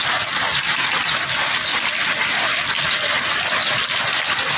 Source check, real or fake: real